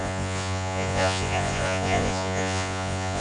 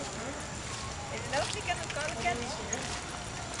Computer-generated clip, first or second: first